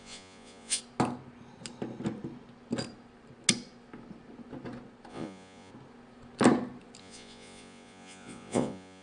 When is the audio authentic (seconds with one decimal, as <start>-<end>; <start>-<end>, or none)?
0.8-5.1; 5.7-7.0